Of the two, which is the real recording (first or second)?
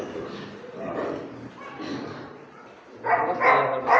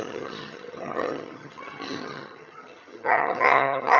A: first